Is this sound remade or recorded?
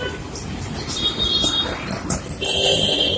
recorded